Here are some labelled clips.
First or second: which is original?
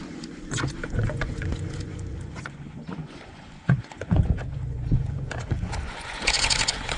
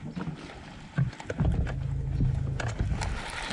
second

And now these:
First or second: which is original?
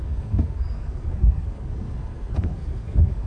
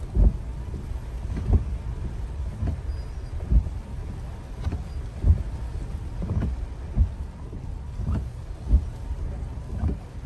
second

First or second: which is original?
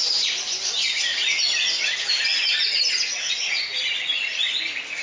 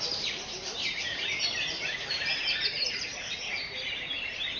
first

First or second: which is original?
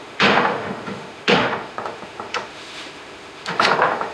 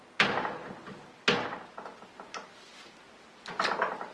second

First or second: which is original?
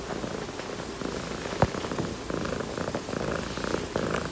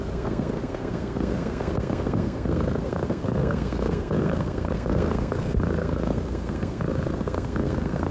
first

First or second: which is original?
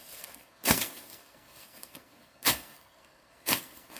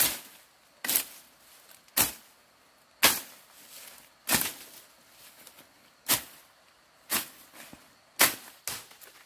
second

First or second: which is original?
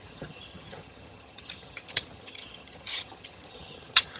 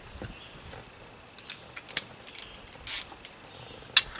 second